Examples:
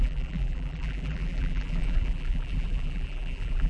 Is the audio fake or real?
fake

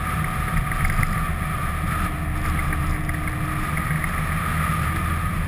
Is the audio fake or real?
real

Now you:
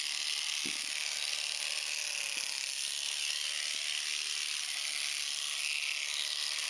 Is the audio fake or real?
real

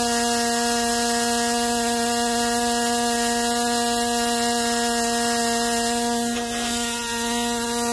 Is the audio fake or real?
real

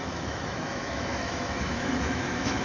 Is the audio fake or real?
fake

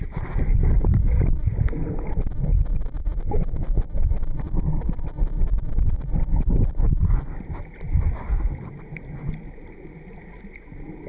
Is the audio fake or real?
real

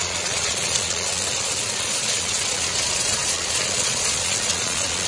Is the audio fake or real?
fake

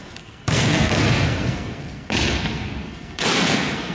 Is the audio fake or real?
fake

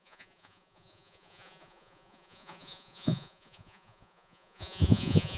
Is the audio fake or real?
fake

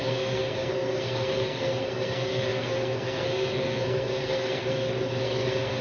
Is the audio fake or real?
fake